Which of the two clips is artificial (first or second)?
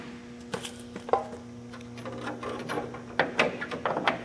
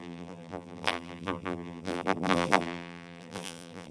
second